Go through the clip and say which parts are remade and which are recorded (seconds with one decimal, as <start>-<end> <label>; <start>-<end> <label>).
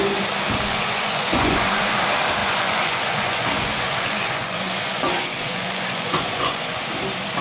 0.0-0.7 recorded; 0.7-2.0 remade; 2.0-2.4 recorded; 2.4-6.8 remade; 6.8-7.4 recorded